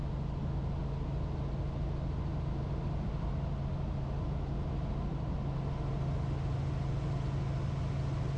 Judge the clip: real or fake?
real